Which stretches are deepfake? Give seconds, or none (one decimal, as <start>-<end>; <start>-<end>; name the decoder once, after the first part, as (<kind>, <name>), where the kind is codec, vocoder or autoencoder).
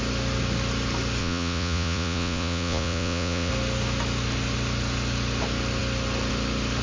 1.2-3.5 (vocoder, Vocos)